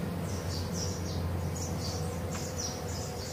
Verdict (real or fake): real